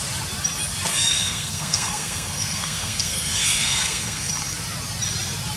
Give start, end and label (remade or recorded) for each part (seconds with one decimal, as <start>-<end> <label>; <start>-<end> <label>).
0.0-0.9 recorded; 0.9-4.3 remade; 4.3-5.6 recorded

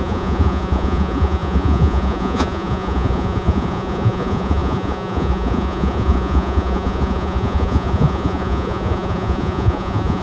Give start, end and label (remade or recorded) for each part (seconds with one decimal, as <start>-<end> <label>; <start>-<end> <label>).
0.0-10.2 remade

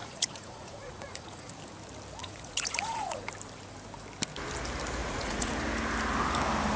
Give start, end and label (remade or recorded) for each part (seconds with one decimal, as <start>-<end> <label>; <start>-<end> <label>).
0.0-1.5 remade; 1.5-2.2 recorded; 2.2-3.2 remade; 3.2-5.0 recorded; 5.0-5.5 remade; 5.5-6.8 recorded

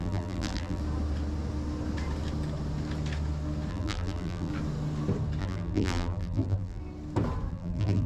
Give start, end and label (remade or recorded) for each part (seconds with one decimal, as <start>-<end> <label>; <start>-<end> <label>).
0.0-0.8 remade; 0.8-3.7 recorded; 3.7-4.5 remade; 4.5-5.4 recorded; 5.4-6.8 remade; 6.8-7.5 recorded; 7.5-8.1 remade

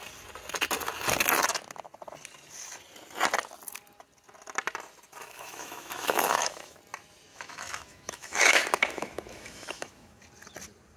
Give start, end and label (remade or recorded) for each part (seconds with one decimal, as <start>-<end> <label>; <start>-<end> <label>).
0.0-5.2 recorded; 5.2-6.8 remade; 6.8-7.3 recorded; 7.3-10.2 remade; 10.2-11.0 recorded